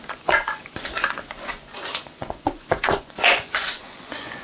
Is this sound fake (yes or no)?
yes